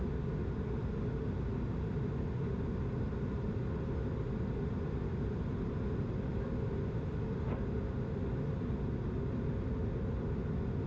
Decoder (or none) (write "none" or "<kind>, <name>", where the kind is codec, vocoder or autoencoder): none